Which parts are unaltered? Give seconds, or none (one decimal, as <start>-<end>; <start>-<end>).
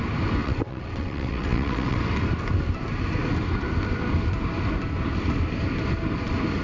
0.0-0.4; 2.0-6.6